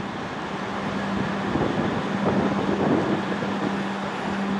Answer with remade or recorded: recorded